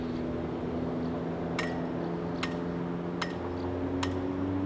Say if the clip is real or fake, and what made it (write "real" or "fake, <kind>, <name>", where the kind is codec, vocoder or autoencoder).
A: real